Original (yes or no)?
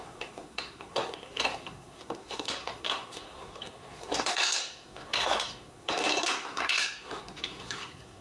no